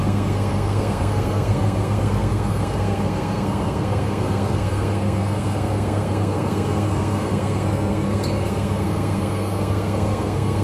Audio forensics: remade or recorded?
remade